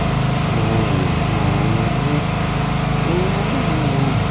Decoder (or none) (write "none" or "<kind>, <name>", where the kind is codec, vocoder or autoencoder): none